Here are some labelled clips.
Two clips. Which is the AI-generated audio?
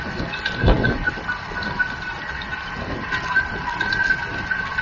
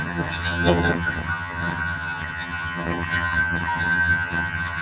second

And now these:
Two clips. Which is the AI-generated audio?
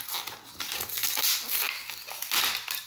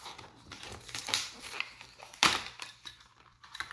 second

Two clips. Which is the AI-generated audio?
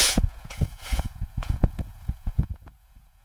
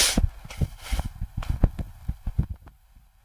first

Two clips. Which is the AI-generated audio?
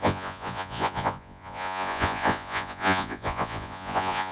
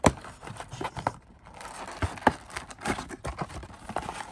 first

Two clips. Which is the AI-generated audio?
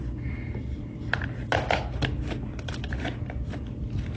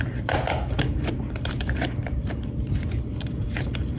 second